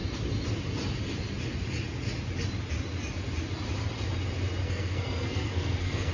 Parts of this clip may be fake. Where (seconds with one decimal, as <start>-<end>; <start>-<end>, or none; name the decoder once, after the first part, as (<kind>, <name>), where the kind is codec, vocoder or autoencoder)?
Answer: 4.6-6.1 (codec, SNAC)